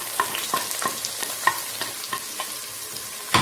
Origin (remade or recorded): recorded